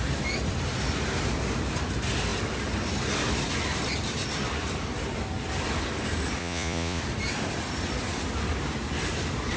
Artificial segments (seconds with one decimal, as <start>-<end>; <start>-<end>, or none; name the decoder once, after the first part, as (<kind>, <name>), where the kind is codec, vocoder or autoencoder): 6.4-7.0 (vocoder, Vocos)